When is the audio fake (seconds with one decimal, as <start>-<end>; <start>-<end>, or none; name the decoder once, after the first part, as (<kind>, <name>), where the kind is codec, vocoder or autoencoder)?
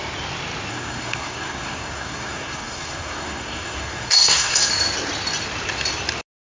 0.7-4.7 (codec, SNAC)